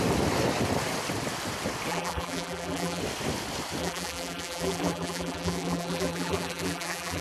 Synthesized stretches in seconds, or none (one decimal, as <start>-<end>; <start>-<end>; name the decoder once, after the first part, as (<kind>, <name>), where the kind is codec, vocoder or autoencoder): 1.9-3.0 (vocoder, BigVGAN v2); 3.8-7.2